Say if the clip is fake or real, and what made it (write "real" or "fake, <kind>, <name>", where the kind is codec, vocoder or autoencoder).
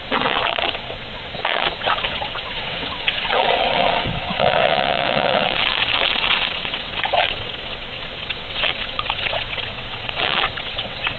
fake, vocoder, WaveNeXt